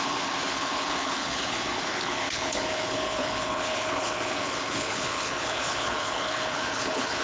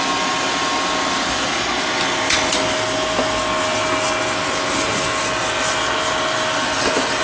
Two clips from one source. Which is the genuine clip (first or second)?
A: second